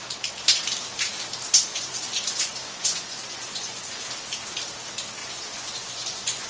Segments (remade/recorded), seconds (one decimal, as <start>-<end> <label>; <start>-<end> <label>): 0.0-1.7 recorded; 1.7-4.0 remade; 4.0-5.2 recorded; 5.2-6.5 remade